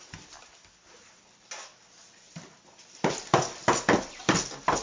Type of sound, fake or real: real